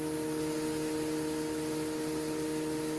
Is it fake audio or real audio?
real